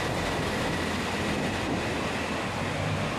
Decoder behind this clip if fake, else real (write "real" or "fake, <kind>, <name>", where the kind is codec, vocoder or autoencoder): real